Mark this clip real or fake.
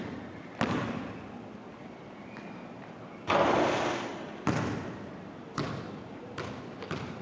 real